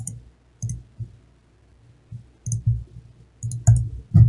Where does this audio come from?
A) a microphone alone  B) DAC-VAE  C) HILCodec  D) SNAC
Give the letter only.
A